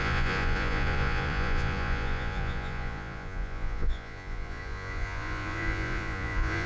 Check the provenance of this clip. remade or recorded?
remade